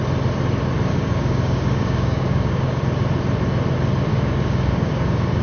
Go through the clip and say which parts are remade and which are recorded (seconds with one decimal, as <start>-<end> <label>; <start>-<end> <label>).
0.0-0.9 recorded; 0.9-2.8 remade; 2.8-4.1 recorded; 4.1-5.4 remade